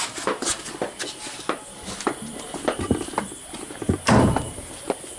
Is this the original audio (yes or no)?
yes